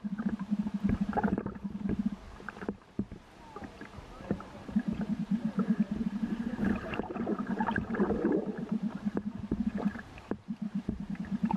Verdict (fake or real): fake